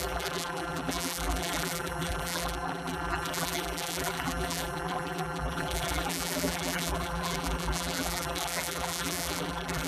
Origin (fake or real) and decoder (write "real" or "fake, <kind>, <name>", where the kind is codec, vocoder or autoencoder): fake, vocoder, BigVGAN v2